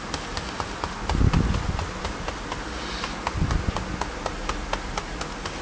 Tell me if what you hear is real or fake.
real